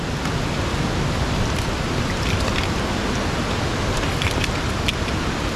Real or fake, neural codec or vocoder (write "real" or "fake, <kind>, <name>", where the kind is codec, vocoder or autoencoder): real